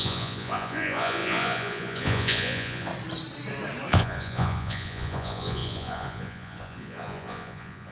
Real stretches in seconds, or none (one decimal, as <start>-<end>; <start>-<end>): 2.9-3.9